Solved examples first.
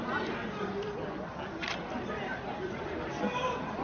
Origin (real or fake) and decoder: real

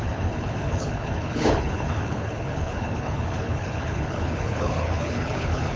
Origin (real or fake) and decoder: fake, codec, HILCodec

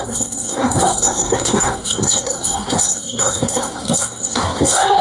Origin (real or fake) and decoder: fake, codec, SNAC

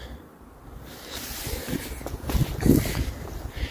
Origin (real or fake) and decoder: real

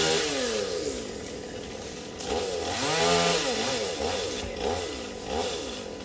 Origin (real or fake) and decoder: real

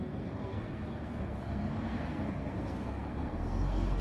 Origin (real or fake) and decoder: fake, codec, SNAC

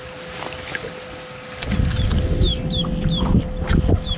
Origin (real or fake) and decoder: real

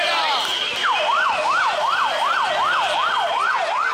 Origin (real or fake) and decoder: real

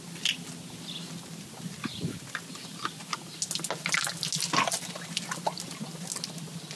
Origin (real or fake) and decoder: real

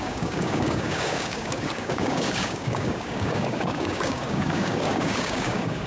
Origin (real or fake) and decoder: fake, codec, DAC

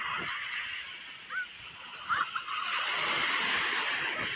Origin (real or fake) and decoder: real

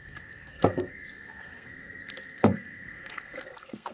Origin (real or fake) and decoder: fake, codec, SNAC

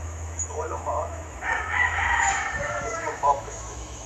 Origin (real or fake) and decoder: fake, autoencoder, DAC-VAE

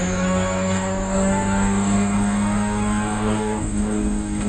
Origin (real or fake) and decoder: fake, codec, DAC